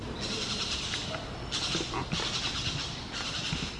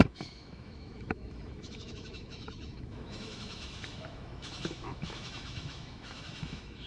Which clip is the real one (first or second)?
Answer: first